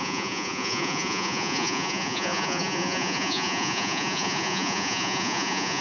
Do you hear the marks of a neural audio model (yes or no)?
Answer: yes